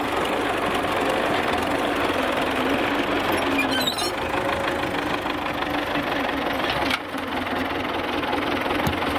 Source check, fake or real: real